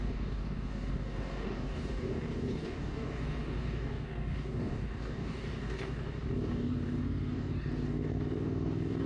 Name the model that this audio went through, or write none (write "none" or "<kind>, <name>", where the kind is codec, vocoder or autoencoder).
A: codec, DAC